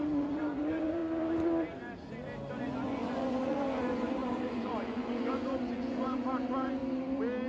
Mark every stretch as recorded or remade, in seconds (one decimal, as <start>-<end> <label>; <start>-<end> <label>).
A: 0.0-1.0 remade; 1.0-2.6 recorded; 2.6-6.8 remade; 6.8-7.5 recorded